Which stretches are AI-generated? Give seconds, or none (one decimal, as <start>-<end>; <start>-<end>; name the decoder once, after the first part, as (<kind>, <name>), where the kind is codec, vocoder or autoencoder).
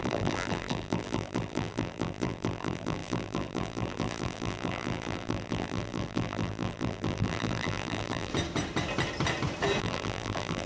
0.0-8.3 (vocoder, BigVGAN v2); 9.8-10.7